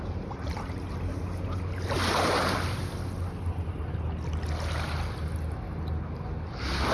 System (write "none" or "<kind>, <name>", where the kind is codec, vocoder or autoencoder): none